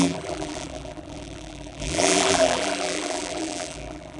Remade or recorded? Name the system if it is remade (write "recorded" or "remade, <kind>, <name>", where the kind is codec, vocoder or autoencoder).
remade, vocoder, BigVGAN v2